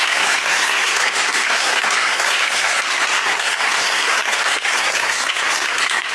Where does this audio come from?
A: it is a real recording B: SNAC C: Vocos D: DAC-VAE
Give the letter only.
B